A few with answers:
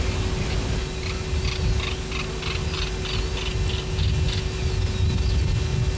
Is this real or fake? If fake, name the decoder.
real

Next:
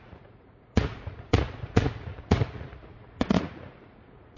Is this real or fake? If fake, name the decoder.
fake, vocoder, Vocos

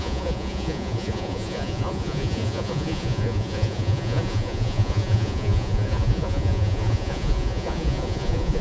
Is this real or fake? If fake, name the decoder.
fake, vocoder, Vocos